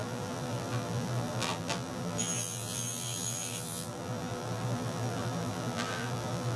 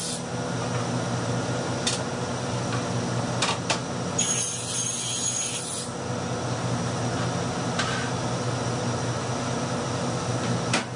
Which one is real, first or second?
second